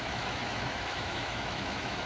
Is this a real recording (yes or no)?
no